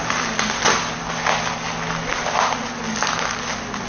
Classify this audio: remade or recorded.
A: recorded